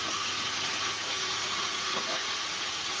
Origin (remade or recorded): remade